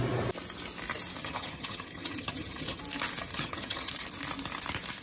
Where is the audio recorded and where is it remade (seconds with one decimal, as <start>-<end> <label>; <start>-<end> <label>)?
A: 0.0-1.2 recorded; 1.2-2.8 remade; 2.8-3.3 recorded; 3.3-3.9 remade; 3.9-5.0 recorded